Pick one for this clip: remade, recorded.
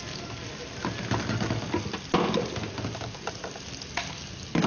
recorded